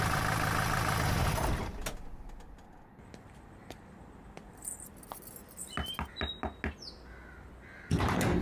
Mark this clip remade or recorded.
recorded